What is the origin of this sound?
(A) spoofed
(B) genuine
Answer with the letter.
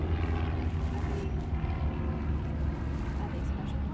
B